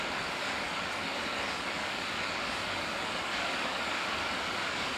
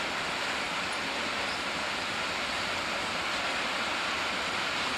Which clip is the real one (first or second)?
second